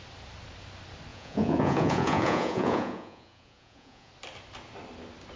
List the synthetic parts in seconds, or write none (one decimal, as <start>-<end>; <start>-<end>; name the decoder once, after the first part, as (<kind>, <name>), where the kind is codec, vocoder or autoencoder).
1.1-4.1 (vocoder, Vocos)